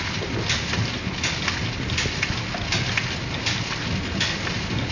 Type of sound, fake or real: real